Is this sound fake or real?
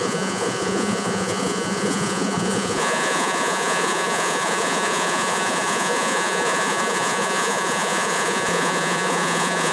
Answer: fake